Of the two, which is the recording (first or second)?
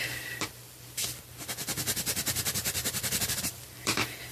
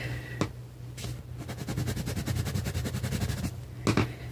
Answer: second